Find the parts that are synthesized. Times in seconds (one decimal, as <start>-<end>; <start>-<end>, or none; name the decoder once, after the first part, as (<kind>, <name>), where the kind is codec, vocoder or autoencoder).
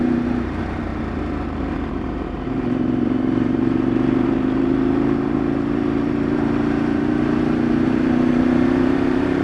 0.0-0.9 (vocoder, BigVGAN v2); 1.9-9.4